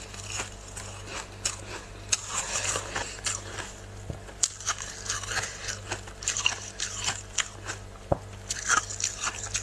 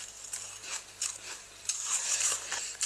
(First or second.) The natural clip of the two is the first